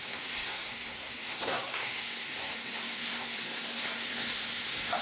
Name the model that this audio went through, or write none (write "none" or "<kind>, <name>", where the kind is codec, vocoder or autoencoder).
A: codec, SNAC